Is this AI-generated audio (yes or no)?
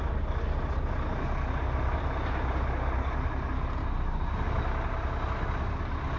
no